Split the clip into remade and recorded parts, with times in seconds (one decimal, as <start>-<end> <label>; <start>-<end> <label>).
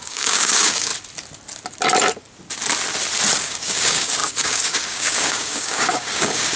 0.0-0.9 remade; 0.9-3.4 recorded; 3.4-6.6 remade